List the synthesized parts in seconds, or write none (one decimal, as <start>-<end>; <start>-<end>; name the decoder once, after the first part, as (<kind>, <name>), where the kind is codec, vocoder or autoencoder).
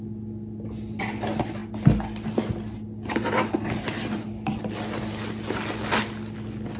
none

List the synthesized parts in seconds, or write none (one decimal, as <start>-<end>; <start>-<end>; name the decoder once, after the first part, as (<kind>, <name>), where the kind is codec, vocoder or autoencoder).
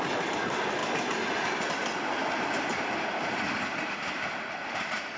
0.0-0.8 (vocoder, BigVGAN v2); 3.9-5.2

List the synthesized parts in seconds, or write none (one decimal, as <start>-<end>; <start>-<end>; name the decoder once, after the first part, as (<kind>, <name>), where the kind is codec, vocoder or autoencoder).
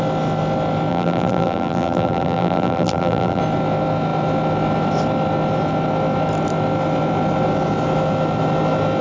0.9-3.4 (vocoder, BigVGAN v2)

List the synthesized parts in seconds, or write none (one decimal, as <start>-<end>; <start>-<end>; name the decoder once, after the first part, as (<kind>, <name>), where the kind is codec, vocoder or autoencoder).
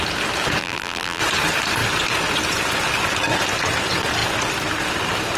0.6-1.2 (vocoder, BigVGAN v2)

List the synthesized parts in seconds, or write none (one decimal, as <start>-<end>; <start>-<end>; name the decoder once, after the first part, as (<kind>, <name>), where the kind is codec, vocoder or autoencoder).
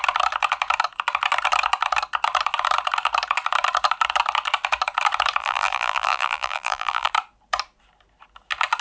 5.4-7.1 (vocoder, BigVGAN v2)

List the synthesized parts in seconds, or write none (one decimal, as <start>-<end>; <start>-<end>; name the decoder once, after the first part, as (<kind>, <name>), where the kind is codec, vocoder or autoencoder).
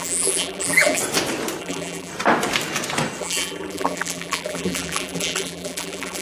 0.0-1.0 (vocoder, BigVGAN v2); 1.6-2.1; 3.2-6.2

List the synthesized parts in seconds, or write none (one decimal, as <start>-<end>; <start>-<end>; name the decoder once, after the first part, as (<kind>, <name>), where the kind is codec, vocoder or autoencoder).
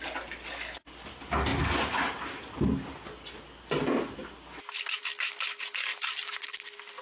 none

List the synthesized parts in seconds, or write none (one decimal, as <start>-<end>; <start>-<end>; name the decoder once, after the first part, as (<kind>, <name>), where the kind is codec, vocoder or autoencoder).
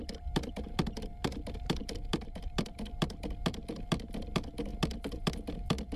0.0-6.0 (vocoder, BigVGAN v2)